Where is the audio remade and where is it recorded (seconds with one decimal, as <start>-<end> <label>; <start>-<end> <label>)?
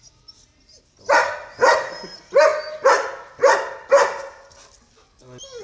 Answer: 0.0-5.6 recorded